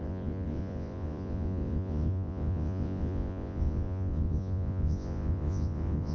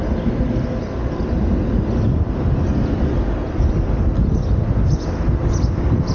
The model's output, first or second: first